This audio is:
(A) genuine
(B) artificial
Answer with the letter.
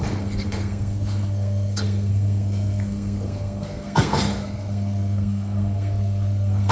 B